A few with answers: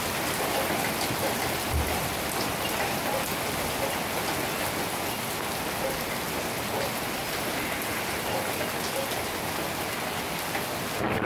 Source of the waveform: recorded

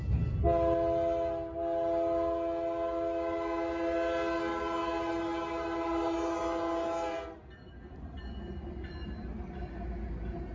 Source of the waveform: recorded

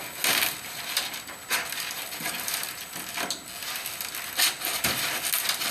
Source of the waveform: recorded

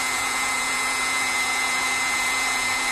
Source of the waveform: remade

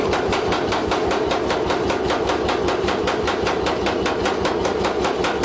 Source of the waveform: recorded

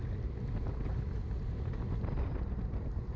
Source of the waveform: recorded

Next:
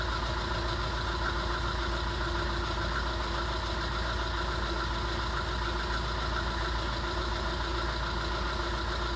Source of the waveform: recorded